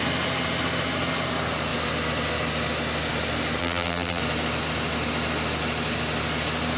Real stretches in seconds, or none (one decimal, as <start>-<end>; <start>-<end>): 0.0-3.6; 4.2-6.8